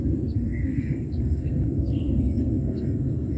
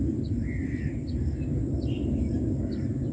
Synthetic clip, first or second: first